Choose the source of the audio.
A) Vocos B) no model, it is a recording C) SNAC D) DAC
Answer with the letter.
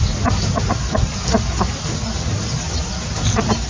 B